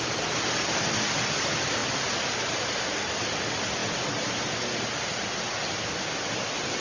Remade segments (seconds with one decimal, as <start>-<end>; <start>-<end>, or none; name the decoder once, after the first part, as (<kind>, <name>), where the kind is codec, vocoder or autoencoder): none